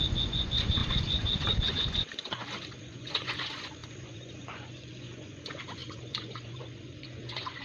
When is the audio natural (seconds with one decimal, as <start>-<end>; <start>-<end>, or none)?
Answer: none